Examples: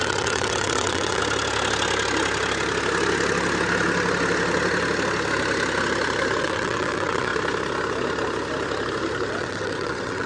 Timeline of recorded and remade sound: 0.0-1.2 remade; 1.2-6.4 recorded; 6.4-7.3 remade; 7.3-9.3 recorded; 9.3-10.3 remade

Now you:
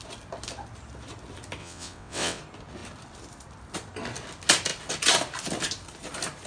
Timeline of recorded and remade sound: 0.0-1.6 recorded; 1.6-2.4 remade; 2.4-6.5 recorded

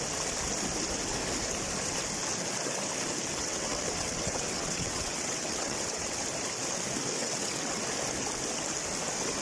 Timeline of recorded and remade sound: 0.0-3.4 recorded; 3.4-6.2 remade; 6.2-7.2 recorded; 7.2-7.8 remade; 7.8-9.4 recorded

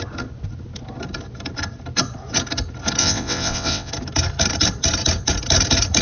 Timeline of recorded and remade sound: 0.0-3.0 recorded; 3.0-3.9 remade; 3.9-6.0 recorded

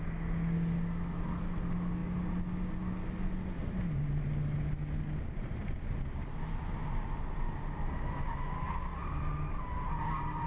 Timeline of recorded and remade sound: 0.0-10.5 recorded

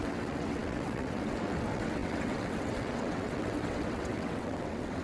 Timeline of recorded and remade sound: 0.0-5.0 remade

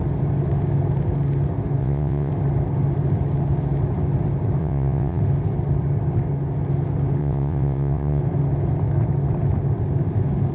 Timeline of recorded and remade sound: 0.0-1.8 recorded; 1.8-2.3 remade; 2.3-4.6 recorded; 4.6-5.2 remade; 5.2-7.2 recorded; 7.2-8.2 remade; 8.2-10.5 recorded